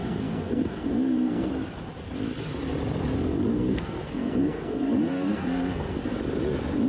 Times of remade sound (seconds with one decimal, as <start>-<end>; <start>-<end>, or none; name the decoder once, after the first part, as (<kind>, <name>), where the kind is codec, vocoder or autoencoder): 0.0-1.5 (codec, SNAC); 3.5-6.0